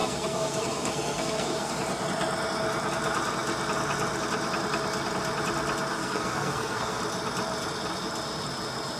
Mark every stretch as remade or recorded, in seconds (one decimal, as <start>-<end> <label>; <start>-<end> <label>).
0.0-1.7 remade; 1.7-6.0 recorded; 6.0-7.0 remade; 7.0-9.0 recorded